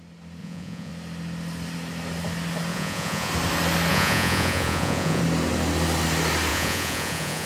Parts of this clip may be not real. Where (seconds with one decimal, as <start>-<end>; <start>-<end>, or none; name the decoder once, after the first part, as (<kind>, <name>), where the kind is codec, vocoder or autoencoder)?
0.4-0.9 (vocoder, Vocos); 2.7-3.3; 3.9-5.2; 6.5-7.5